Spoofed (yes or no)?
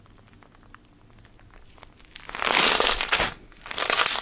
no